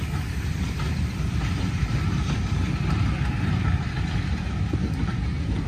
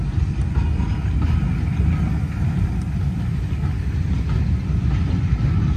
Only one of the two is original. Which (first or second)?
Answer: second